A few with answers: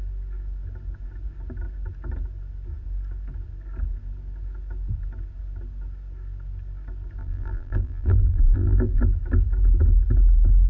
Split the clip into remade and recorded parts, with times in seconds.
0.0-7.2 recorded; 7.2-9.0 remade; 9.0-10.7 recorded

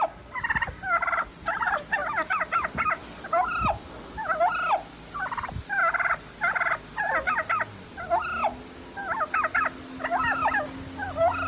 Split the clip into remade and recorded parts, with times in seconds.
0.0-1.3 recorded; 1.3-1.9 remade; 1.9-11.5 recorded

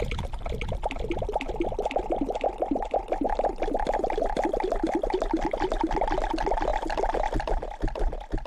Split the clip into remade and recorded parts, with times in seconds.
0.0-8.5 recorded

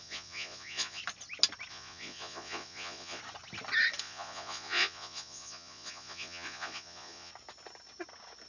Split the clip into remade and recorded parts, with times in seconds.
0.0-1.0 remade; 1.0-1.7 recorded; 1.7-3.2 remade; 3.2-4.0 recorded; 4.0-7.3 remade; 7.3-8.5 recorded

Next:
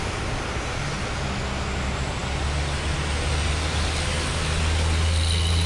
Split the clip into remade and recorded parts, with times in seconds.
0.0-5.7 recorded

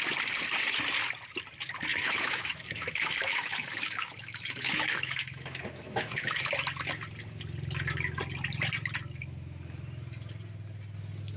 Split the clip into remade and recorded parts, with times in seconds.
0.0-1.9 recorded; 1.9-6.5 remade; 6.5-11.4 recorded

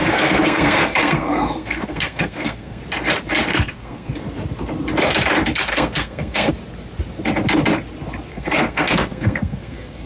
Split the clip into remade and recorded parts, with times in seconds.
0.0-2.8 remade; 2.8-3.5 recorded; 3.5-4.1 remade; 4.1-5.7 recorded; 5.7-6.5 remade; 6.5-8.3 recorded; 8.3-10.1 remade